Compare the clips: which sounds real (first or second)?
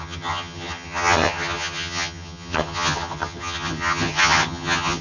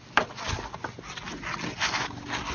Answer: second